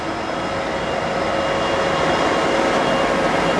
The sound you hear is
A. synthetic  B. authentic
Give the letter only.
B